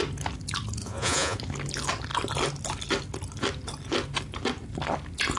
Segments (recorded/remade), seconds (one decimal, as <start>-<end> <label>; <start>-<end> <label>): 0.0-0.8 recorded; 0.8-1.4 remade; 1.4-5.4 recorded